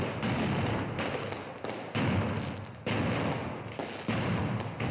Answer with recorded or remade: recorded